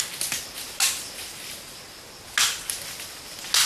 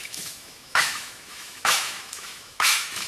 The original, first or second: first